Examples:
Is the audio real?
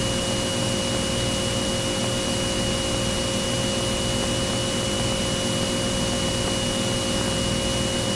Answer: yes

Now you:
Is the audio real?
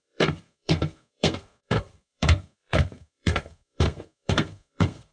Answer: no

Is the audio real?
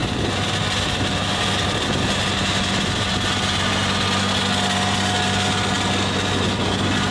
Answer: yes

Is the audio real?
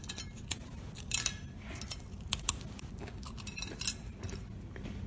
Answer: yes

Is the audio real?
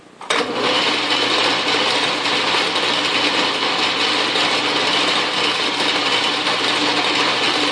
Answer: yes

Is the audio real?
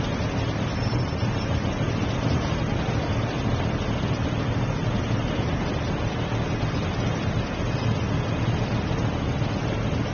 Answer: yes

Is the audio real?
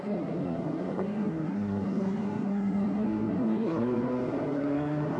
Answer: no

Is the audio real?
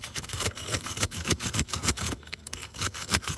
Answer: no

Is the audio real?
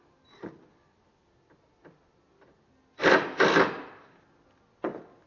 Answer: yes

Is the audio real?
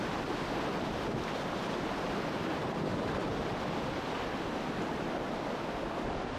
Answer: yes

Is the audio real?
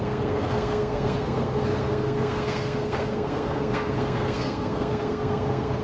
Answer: no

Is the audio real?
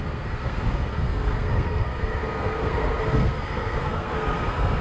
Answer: no